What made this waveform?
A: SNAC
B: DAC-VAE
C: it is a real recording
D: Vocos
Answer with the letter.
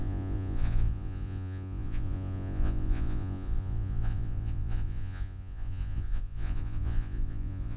D